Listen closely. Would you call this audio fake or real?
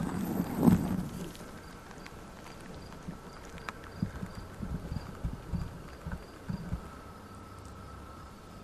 real